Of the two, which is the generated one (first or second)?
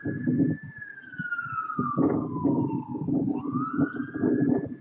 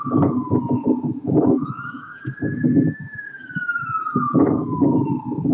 second